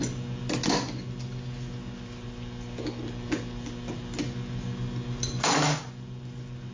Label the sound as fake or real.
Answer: real